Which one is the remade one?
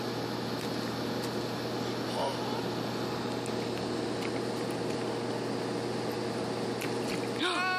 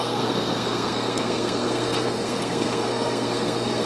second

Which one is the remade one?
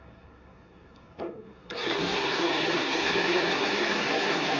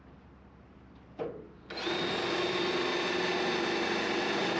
first